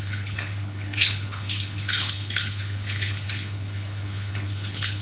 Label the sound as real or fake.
fake